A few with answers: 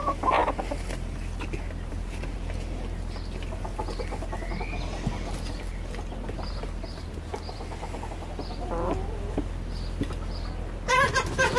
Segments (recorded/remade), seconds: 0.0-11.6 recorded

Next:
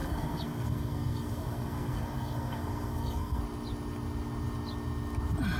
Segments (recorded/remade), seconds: 0.0-3.4 remade; 3.4-5.6 recorded

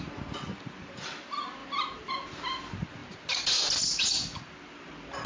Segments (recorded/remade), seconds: 0.0-5.3 recorded

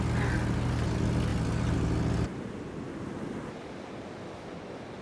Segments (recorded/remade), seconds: 0.0-5.0 recorded

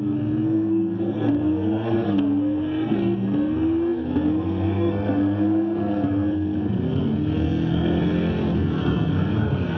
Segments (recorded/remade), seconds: 0.0-9.8 remade

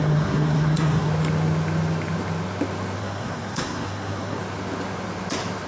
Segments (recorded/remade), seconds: 0.0-1.1 remade; 1.1-3.0 recorded; 3.0-4.4 remade; 4.4-5.7 recorded

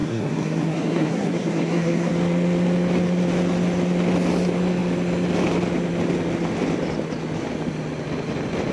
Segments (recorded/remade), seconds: 0.0-2.1 remade; 2.1-8.7 recorded